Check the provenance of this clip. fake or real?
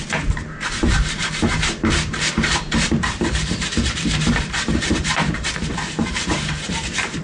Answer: fake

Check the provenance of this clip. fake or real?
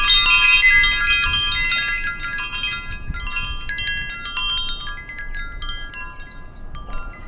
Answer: real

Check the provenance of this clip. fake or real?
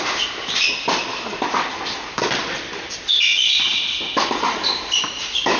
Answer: real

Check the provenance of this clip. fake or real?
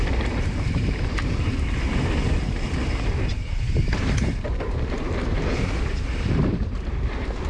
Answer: fake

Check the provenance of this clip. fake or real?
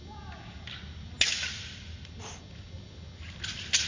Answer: real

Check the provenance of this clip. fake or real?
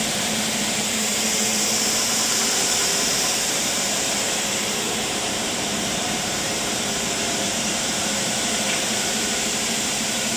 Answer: fake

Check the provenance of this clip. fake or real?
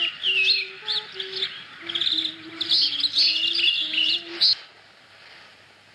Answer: real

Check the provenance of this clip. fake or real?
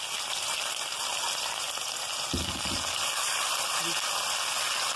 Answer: real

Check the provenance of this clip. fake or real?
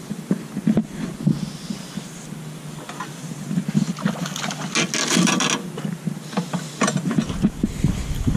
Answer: real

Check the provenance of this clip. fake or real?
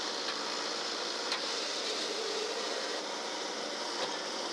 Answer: real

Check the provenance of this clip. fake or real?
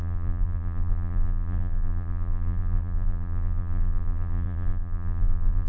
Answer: fake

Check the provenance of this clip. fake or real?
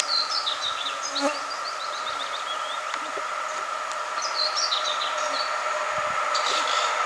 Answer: real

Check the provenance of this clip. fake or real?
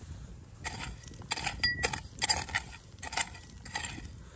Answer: real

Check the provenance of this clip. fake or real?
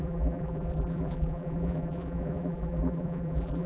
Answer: fake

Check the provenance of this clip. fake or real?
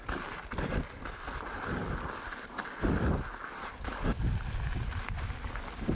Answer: real